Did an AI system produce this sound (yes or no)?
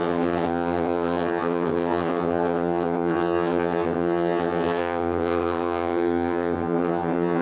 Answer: yes